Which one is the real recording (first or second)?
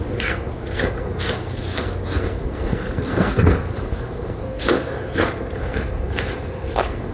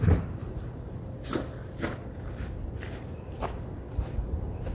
second